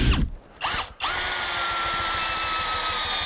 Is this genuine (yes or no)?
yes